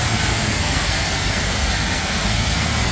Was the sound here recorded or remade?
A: remade